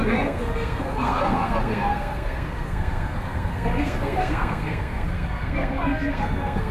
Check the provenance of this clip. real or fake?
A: fake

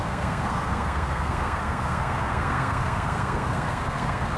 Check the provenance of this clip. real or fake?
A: fake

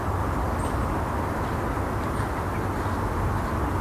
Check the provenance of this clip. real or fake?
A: real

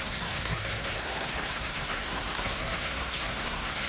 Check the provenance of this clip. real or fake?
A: fake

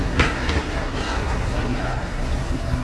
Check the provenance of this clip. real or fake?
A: fake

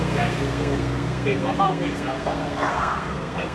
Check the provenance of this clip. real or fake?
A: fake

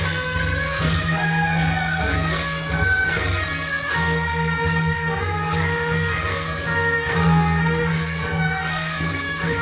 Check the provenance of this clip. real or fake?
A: fake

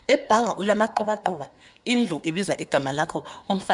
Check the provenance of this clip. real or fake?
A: fake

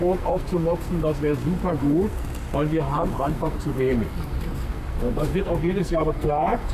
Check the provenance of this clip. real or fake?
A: fake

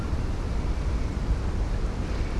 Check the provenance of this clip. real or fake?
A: real